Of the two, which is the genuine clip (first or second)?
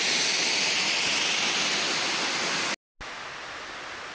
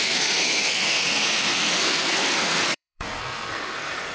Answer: first